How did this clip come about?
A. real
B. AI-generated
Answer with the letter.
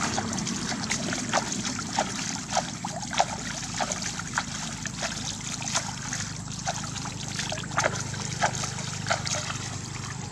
A